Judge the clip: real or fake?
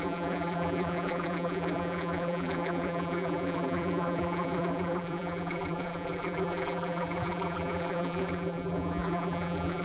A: fake